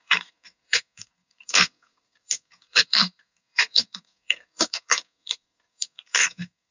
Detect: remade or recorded remade